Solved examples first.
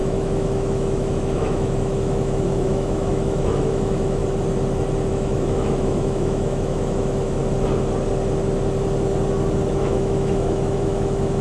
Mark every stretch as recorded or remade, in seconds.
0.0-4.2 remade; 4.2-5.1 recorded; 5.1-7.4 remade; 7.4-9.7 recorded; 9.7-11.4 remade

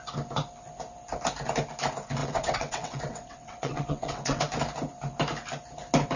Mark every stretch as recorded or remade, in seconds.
0.0-2.2 recorded; 2.2-4.4 remade; 4.4-6.2 recorded